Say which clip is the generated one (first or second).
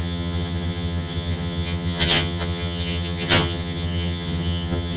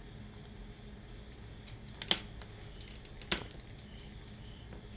first